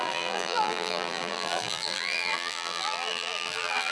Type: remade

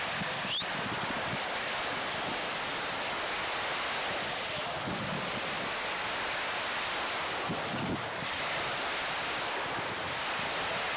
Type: recorded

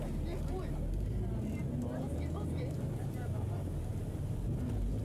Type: recorded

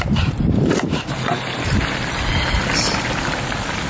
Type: recorded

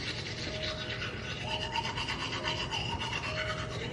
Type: recorded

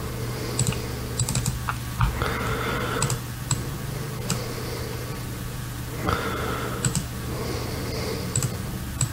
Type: recorded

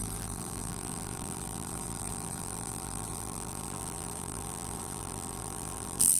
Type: remade